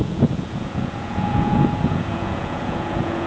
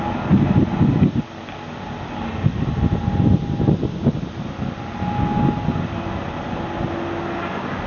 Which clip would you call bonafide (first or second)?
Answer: second